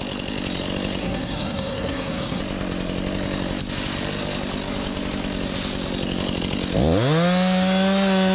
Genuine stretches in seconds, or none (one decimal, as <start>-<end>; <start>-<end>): 0.0-1.0; 2.4-8.3